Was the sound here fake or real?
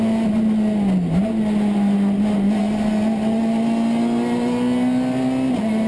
real